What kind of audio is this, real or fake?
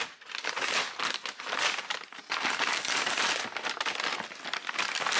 real